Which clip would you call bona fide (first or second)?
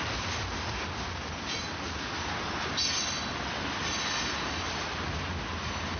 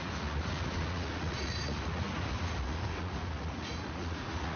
first